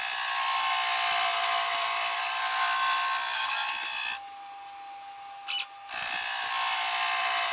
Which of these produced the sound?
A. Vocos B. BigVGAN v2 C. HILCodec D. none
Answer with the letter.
D